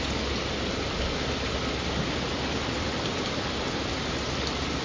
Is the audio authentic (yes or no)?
yes